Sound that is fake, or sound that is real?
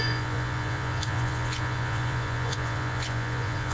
fake